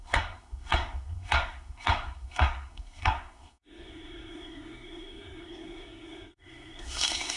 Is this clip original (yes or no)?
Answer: no